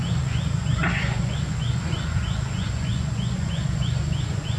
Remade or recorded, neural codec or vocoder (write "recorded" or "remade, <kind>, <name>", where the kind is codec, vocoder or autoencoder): remade, vocoder, Vocos